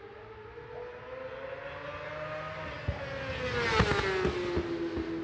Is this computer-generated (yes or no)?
no